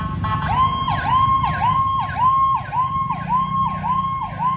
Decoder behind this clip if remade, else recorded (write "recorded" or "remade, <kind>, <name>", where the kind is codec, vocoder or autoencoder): recorded